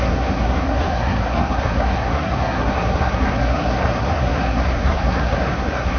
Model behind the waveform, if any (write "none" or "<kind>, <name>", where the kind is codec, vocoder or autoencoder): codec, SNAC